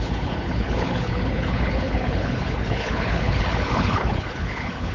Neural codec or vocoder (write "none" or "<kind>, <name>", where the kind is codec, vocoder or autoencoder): codec, HILCodec